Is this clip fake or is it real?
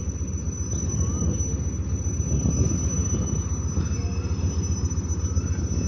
real